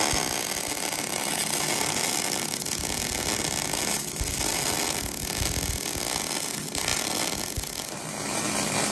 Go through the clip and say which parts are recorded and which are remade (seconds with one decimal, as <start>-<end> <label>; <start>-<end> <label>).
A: 0.0-8.9 recorded